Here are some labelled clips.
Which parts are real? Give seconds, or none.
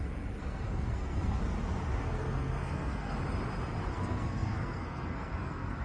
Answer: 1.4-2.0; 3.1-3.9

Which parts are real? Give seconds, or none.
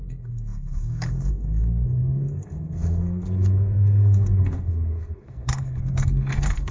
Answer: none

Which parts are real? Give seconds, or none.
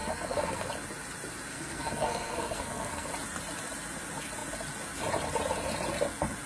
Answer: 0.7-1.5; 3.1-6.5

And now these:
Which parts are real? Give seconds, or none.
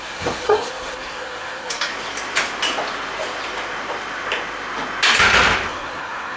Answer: 1.9-5.7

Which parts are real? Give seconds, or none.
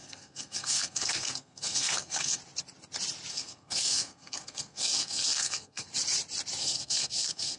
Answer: 2.4-3.3; 5.9-6.6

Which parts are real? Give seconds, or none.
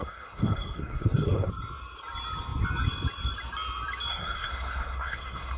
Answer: 1.5-4.1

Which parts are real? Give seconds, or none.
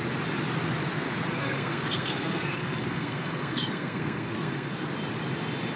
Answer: 0.0-1.3; 4.8-5.8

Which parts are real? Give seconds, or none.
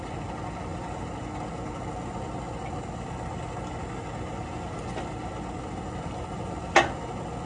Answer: 0.0-7.5